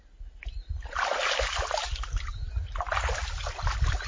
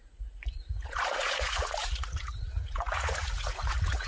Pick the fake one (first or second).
second